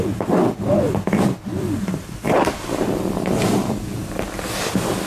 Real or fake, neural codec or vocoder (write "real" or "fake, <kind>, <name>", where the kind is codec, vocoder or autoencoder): real